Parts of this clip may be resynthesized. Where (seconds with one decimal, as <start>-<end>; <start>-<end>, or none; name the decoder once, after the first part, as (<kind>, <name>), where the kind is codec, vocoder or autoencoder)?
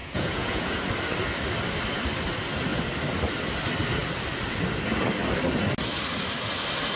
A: 0.0-0.8 (vocoder, Vocos)